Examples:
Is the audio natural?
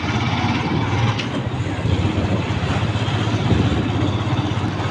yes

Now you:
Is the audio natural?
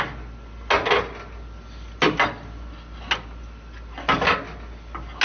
yes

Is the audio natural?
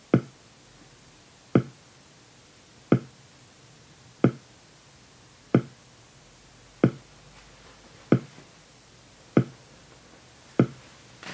yes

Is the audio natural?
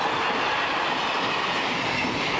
yes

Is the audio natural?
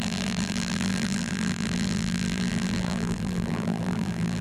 no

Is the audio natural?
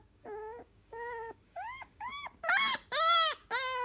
no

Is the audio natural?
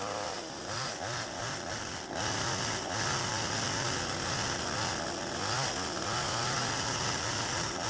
yes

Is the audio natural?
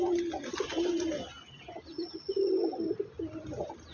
yes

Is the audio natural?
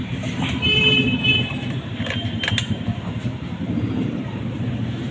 no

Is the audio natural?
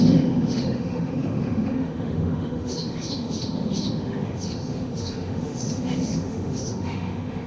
no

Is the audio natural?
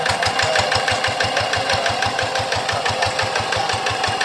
yes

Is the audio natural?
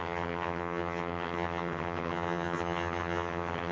no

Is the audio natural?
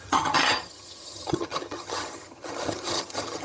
no